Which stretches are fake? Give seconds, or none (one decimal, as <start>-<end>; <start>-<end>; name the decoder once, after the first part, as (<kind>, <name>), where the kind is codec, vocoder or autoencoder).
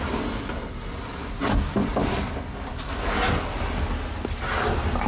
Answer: none